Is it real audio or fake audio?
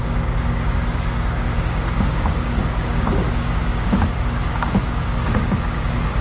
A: fake